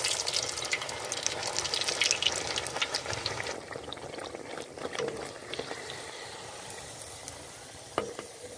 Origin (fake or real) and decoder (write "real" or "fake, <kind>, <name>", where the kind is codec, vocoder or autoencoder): real